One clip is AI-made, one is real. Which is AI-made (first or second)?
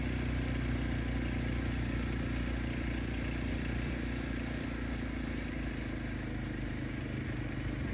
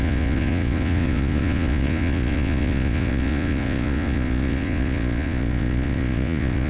second